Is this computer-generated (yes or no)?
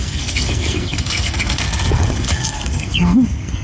yes